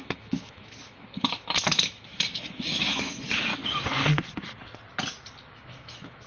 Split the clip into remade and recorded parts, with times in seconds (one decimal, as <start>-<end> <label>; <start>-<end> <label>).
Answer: 0.0-3.5 remade; 3.5-5.5 recorded; 5.5-6.3 remade